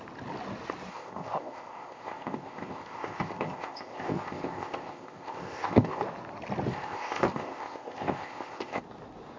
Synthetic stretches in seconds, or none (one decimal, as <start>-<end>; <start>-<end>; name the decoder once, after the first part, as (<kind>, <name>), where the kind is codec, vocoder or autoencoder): 0.9-6.0 (codec, ZipCodec); 6.7-8.8